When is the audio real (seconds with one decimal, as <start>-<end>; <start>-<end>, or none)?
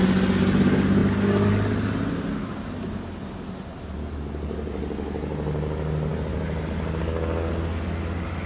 0.0-8.5